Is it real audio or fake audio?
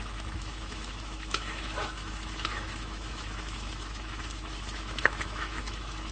fake